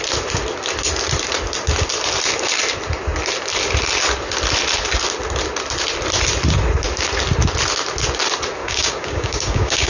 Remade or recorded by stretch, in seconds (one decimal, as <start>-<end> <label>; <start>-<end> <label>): 0.0-8.6 recorded; 8.6-9.9 remade